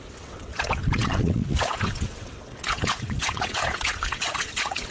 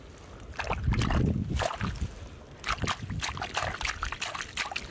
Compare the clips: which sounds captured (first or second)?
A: second